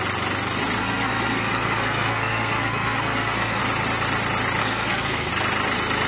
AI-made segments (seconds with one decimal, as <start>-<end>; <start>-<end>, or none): 0.8-3.6; 4.6-5.3